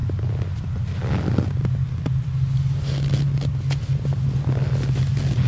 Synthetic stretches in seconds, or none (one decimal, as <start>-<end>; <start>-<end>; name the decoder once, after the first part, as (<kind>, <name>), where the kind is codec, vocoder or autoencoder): 0.0-0.6 (vocoder, BigVGAN v2); 1.6-2.2